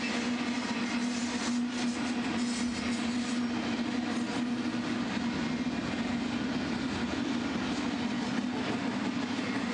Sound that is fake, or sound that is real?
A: real